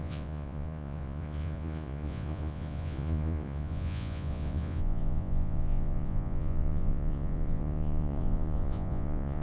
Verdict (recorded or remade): remade